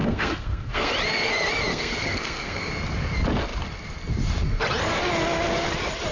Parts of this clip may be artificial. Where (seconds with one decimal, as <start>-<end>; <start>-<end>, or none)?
0.0-0.9; 1.7-2.7